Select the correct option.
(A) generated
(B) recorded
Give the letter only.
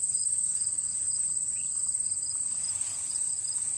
B